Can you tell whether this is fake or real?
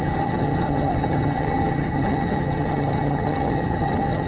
fake